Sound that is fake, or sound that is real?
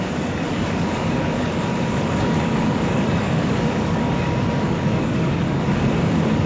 fake